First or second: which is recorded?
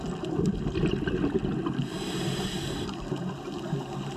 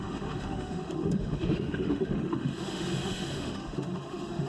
first